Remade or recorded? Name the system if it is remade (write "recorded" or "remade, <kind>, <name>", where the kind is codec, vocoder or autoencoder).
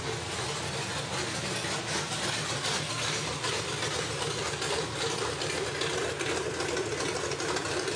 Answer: recorded